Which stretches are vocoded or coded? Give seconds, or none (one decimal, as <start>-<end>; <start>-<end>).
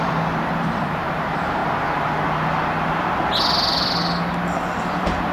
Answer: 0.0-1.6; 4.8-5.3